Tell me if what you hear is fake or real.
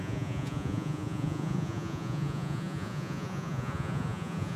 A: fake